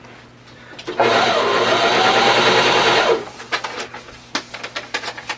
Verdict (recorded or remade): recorded